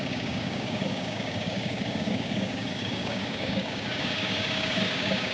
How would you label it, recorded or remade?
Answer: remade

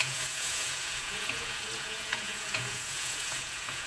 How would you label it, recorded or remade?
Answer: remade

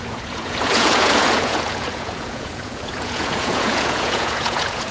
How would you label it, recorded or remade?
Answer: remade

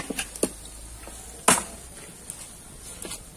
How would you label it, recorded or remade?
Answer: recorded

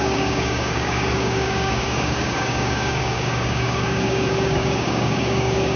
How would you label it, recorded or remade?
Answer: remade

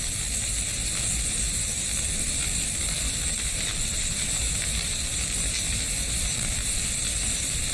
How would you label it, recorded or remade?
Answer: remade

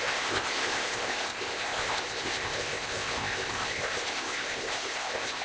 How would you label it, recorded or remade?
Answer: remade